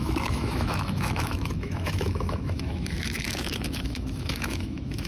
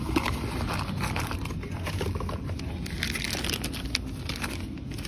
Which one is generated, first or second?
first